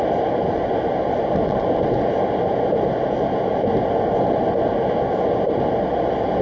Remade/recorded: recorded